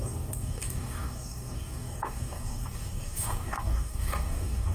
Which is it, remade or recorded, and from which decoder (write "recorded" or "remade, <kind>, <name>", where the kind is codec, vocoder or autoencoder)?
remade, codec, DAC